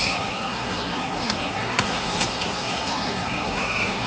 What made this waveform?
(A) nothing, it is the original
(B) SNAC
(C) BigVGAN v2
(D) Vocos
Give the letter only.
B